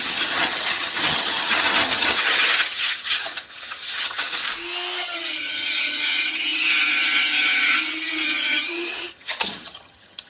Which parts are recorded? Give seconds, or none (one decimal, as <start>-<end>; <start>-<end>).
4.4-5.0